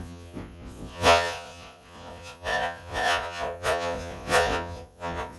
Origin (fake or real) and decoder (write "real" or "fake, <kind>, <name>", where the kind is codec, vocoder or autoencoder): fake, vocoder, Vocos